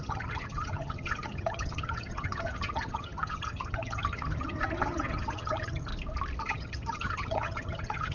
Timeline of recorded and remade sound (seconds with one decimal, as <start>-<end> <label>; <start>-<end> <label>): 0.0-5.9 remade; 5.9-6.4 recorded; 6.4-8.1 remade